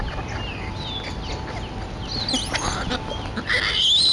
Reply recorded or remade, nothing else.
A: recorded